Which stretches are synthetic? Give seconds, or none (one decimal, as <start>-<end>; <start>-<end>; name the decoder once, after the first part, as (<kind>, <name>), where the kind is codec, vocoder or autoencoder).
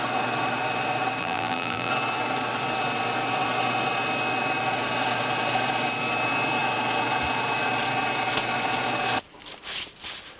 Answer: 1.2-1.9 (vocoder, BigVGAN v2)